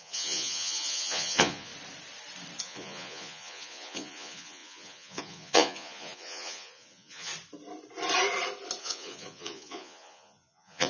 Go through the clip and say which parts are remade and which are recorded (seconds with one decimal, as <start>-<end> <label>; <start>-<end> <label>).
0.0-1.7 remade; 1.7-2.6 recorded; 2.6-7.3 remade; 7.3-8.8 recorded; 8.8-10.9 remade